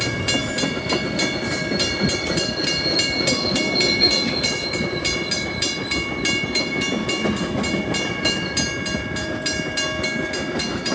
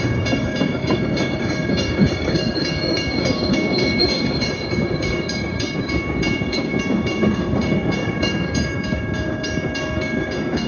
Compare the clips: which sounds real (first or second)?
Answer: first